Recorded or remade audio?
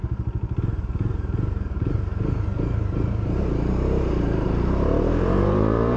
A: remade